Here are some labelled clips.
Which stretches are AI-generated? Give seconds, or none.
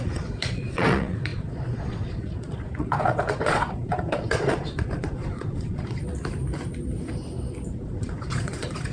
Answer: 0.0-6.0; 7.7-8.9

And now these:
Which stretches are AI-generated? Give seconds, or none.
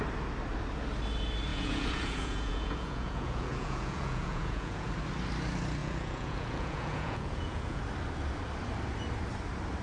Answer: 1.5-4.9; 5.8-7.8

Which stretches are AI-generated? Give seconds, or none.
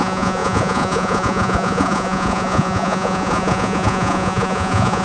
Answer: 0.0-5.0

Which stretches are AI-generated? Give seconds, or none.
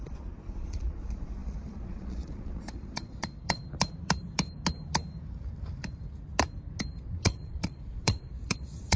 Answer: 0.0-3.6; 7.0-9.0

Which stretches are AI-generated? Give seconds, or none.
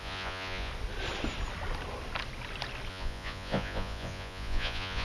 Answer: 0.0-0.7; 2.9-5.0